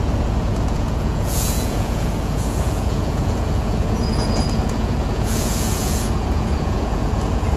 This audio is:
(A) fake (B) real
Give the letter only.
A